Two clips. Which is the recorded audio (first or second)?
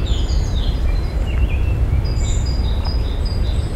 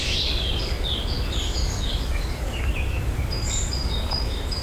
first